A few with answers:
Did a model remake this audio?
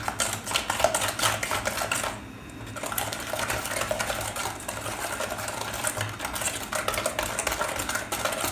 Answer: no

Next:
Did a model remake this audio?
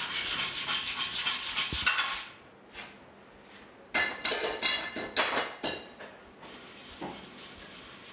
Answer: no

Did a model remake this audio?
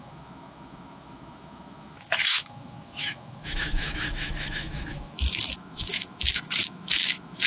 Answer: yes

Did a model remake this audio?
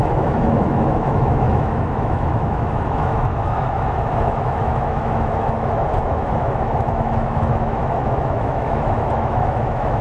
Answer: yes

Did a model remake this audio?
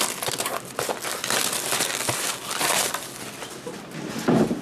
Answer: no